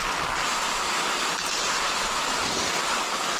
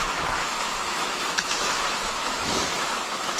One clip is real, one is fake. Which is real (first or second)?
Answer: first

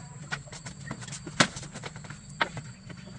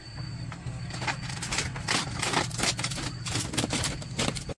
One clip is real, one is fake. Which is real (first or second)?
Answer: second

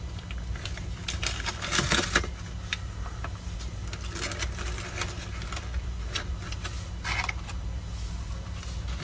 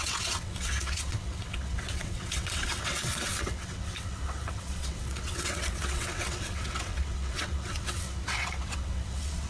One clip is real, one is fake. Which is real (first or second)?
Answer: first